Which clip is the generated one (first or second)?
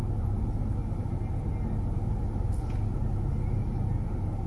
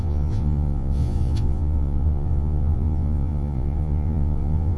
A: second